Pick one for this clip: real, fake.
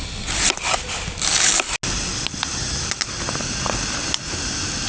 real